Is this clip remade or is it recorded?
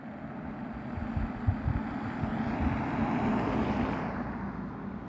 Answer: recorded